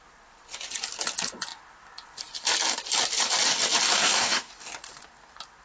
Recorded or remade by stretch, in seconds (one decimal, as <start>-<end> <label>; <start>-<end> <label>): 0.0-3.9 recorded; 3.9-4.5 remade; 4.5-5.6 recorded